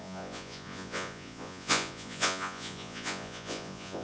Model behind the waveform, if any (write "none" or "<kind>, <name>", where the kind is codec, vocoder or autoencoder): vocoder, Vocos